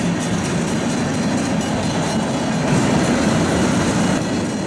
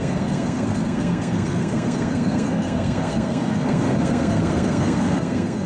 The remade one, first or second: second